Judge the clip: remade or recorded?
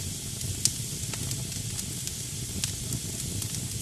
recorded